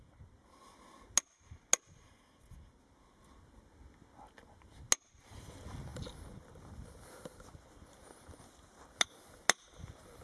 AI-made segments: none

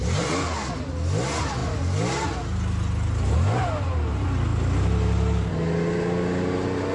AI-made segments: none

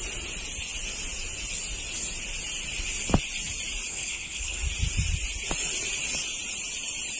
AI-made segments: 3.9-4.6 (codec, HILCodec)

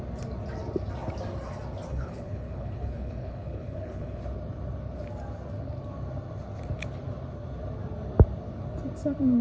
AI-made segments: 1.9-4.2 (codec, HILCodec)